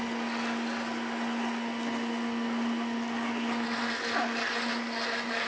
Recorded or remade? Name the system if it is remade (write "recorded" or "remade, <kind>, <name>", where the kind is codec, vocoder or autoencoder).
recorded